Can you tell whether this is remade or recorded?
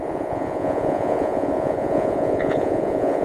remade